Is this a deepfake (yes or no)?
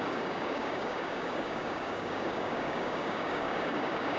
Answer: yes